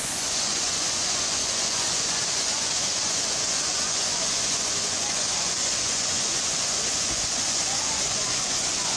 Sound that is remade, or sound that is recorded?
remade